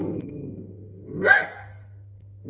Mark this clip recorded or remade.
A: remade